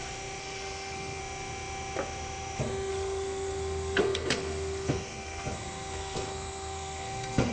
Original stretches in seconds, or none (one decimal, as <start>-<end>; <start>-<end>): 0.0-0.4; 1.2-2.9